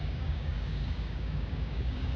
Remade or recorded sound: remade